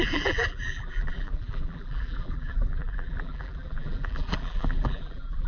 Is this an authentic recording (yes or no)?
no